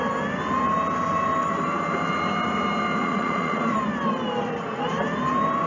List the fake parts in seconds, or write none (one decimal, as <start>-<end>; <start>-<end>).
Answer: 3.0-3.6